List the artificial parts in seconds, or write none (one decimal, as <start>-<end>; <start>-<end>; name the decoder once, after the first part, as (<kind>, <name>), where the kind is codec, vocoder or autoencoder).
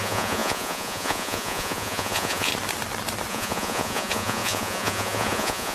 0.0-2.5 (vocoder, Vocos); 3.3-5.7